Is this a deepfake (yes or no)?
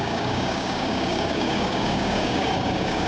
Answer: yes